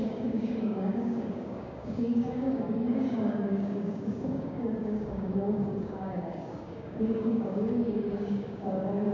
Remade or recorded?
remade